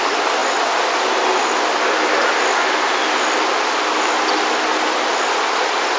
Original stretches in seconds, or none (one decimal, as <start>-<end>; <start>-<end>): 0.0-6.0